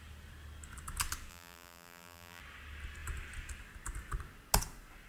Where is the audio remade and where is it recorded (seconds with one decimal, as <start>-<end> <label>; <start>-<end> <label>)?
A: 0.0-1.3 recorded; 1.3-2.4 remade; 2.4-5.1 recorded